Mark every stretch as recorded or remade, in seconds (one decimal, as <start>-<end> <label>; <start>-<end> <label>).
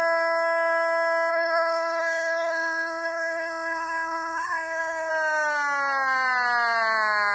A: 0.0-1.3 recorded; 1.3-5.1 remade; 5.1-7.3 recorded